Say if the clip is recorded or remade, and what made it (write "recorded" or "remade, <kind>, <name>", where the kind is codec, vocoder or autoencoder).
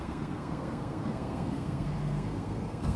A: remade, codec, SNAC